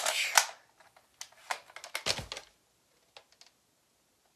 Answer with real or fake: real